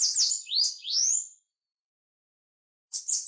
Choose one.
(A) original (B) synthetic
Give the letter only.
A